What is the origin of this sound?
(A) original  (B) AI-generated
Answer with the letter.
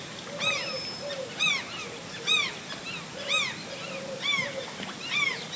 A